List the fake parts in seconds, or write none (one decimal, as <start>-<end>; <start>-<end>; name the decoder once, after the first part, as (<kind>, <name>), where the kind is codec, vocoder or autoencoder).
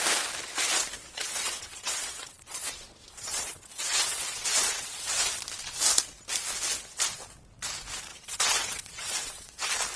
1.0-5.3 (vocoder, WaveNeXt); 8.1-9.6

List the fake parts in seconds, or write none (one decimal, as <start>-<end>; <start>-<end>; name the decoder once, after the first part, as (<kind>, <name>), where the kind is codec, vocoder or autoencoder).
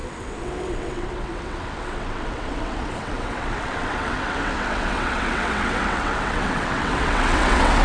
0.0-7.8 (vocoder, WaveNeXt)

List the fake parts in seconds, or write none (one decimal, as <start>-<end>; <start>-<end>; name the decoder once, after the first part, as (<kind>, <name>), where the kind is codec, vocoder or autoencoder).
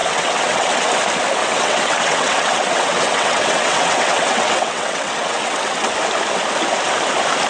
0.0-0.9 (vocoder, WaveNeXt); 1.4-5.9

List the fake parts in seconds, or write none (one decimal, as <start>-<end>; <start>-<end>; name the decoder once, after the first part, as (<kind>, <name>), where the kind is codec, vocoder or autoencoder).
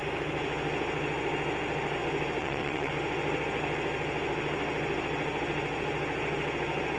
2.4-2.9 (vocoder, WaveNeXt)